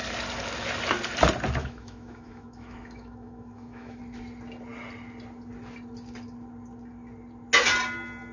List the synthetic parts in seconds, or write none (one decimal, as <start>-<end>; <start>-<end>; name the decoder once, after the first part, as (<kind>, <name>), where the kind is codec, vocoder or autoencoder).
1.6-4.0 (autoencoder, DAC-VAE)